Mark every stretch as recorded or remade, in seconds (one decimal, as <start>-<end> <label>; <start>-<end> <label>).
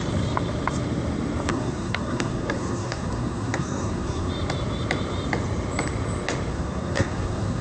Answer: 0.0-1.5 recorded; 1.5-4.3 remade; 4.3-6.5 recorded; 6.5-7.6 remade